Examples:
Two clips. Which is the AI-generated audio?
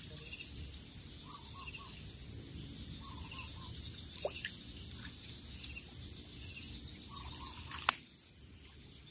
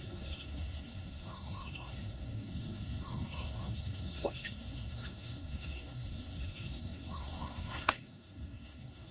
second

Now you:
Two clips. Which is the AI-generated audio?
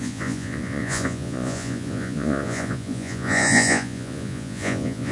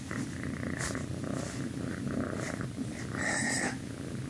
first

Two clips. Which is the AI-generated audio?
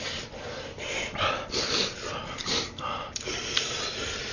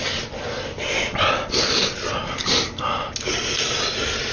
first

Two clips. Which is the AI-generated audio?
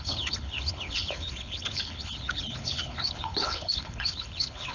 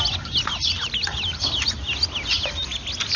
first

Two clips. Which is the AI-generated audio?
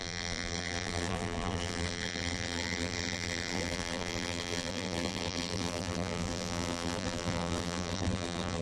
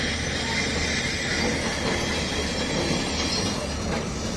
first